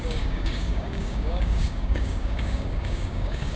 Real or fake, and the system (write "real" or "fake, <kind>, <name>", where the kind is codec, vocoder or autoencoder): fake, codec, DAC